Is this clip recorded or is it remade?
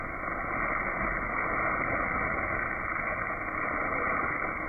recorded